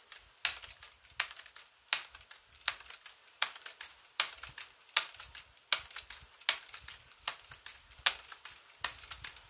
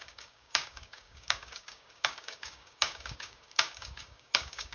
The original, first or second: first